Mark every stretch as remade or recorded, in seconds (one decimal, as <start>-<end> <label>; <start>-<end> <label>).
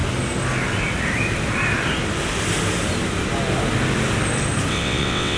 0.0-4.7 recorded; 4.7-5.4 remade